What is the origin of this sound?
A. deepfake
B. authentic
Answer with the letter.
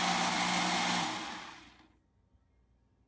B